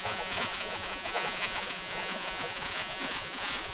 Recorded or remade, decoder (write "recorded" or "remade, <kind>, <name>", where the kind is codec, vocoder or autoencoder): remade, vocoder, Vocos